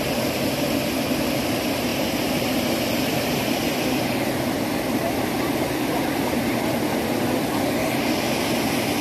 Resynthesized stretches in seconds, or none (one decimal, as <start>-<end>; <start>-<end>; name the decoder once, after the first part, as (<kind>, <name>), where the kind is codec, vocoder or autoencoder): 1.9-2.6 (vocoder, BigVGAN v2)